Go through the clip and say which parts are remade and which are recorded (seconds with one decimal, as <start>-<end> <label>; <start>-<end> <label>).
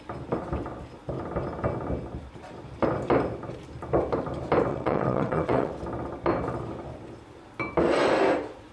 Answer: 0.0-4.7 recorded; 4.7-5.7 remade; 5.7-8.7 recorded